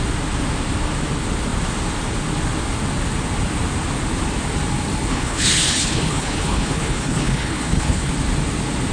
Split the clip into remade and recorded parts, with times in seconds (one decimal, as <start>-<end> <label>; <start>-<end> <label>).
0.0-5.1 recorded; 5.1-8.1 remade; 8.1-8.9 recorded